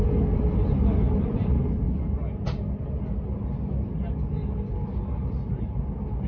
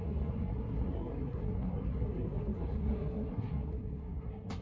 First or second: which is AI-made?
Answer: second